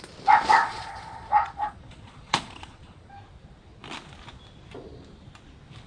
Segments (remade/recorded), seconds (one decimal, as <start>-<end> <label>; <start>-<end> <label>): 0.0-0.6 recorded; 0.6-3.1 remade; 3.1-5.9 recorded